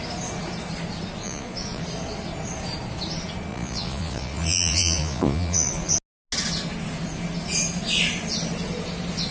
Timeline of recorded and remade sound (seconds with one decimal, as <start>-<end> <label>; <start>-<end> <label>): 0.0-1.2 recorded; 1.2-1.8 remade; 1.8-3.5 recorded; 3.5-5.9 remade; 5.9-9.3 recorded